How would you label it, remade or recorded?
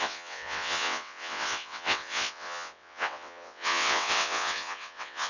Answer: remade